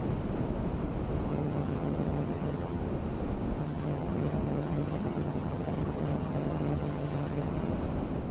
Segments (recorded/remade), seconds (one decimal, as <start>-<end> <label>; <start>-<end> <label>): 0.0-1.3 recorded; 1.3-2.8 remade; 2.8-3.6 recorded; 3.6-7.7 remade; 7.7-8.3 recorded